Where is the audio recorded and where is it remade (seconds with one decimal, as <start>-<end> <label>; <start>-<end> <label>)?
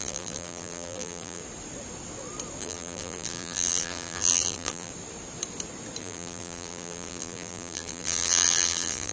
0.0-1.4 remade; 1.4-2.6 recorded; 2.6-4.9 remade; 4.9-6.0 recorded; 6.0-9.1 remade